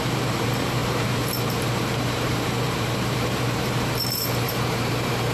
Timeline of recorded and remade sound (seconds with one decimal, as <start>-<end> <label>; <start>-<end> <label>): 0.0-5.3 remade

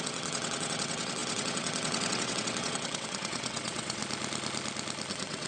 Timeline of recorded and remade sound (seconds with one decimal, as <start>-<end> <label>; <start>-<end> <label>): 0.0-4.0 remade; 4.0-5.1 recorded; 5.1-5.5 remade

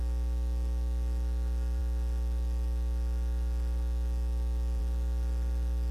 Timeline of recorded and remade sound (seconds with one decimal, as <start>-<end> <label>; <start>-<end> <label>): 0.0-5.9 recorded

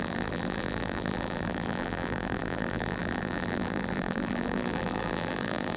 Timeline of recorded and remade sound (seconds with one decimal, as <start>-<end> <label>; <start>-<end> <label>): 0.0-5.8 remade

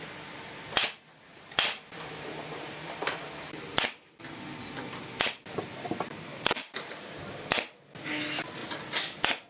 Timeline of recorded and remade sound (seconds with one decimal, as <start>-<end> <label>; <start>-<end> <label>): 0.0-1.3 recorded; 1.3-4.2 remade; 4.2-6.3 recorded; 6.3-7.2 remade; 7.2-9.5 recorded

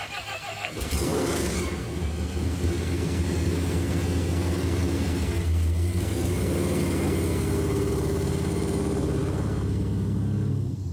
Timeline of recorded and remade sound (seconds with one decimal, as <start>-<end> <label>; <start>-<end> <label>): 0.0-10.9 remade